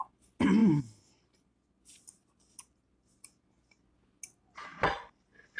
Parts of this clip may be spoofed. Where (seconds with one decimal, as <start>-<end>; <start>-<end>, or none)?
none